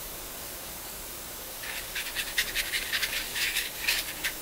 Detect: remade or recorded remade